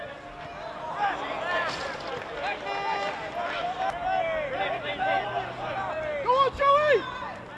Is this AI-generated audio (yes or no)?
no